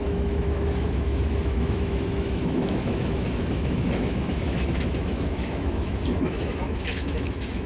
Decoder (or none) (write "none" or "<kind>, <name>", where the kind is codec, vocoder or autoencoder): autoencoder, DAC-VAE